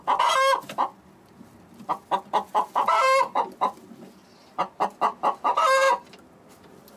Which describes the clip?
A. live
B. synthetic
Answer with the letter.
A